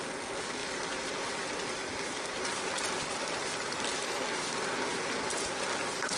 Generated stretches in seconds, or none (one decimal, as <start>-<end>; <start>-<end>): none